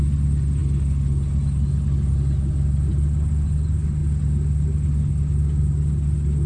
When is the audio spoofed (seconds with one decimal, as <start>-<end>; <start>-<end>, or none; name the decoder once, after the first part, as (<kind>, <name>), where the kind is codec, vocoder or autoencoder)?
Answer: none